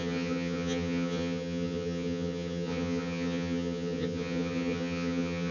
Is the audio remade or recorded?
remade